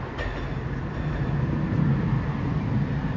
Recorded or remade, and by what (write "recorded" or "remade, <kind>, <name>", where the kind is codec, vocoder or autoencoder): recorded